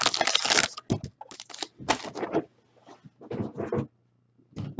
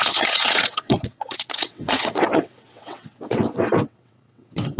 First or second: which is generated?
second